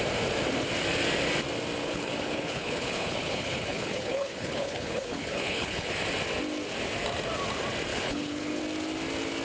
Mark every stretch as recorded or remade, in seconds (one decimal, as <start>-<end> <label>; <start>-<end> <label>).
0.0-1.8 recorded; 1.8-5.9 remade; 5.9-7.9 recorded; 7.9-8.6 remade; 8.6-9.4 recorded